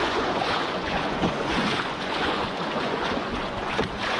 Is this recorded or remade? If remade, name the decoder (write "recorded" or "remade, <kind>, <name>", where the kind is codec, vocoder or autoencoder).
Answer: remade, vocoder, Vocos